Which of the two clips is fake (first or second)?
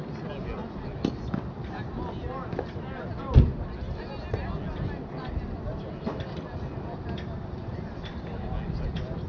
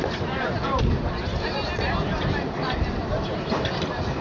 second